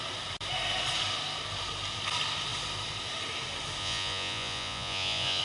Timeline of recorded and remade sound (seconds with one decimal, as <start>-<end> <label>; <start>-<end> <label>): 0.0-3.8 recorded; 3.8-5.4 remade